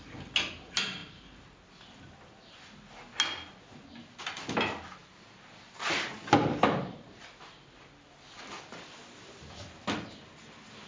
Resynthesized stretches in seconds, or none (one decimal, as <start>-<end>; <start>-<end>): none